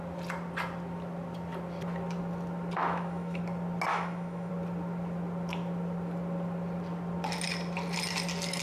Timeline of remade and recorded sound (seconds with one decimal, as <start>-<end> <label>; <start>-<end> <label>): 0.0-2.8 recorded; 2.8-3.4 remade; 3.4-3.9 recorded; 3.9-4.5 remade; 4.5-8.6 recorded